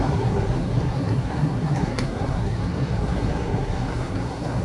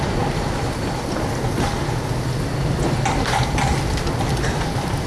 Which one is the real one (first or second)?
second